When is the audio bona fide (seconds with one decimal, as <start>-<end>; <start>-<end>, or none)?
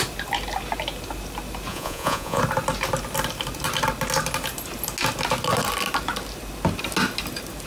0.0-1.7; 2.4-7.7